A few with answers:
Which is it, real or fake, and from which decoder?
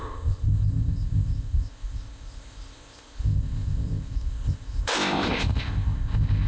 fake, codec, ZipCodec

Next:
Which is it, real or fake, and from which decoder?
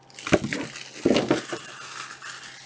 real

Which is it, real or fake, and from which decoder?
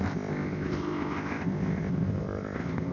fake, codec, ZipCodec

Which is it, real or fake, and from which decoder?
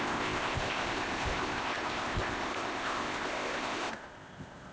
fake, codec, ZipCodec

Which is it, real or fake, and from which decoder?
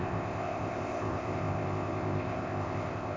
fake, codec, ZipCodec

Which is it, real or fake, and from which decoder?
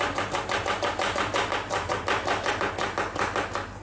real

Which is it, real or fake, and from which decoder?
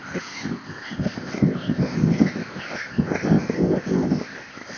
fake, codec, ZipCodec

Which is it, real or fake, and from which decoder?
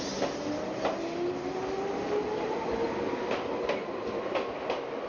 real